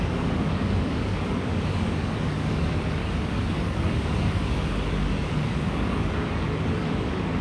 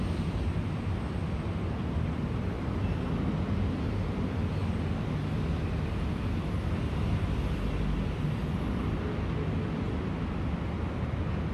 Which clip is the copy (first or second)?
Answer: first